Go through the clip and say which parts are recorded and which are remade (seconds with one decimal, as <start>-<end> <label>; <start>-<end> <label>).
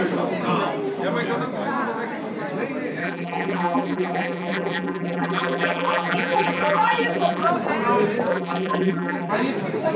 0.0-3.0 recorded; 3.0-7.5 remade; 7.5-8.3 recorded; 8.3-9.3 remade; 9.3-10.0 recorded